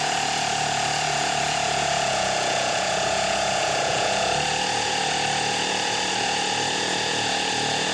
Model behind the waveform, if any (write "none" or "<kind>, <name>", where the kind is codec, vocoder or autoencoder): vocoder, Vocos